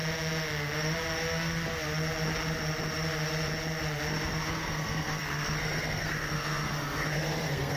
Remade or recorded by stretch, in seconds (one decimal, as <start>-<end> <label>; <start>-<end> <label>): 0.0-4.5 recorded; 4.5-7.8 remade